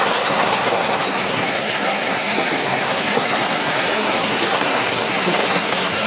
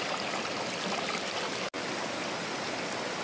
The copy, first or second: first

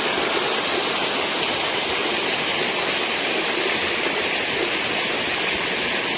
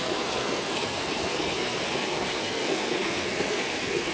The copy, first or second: second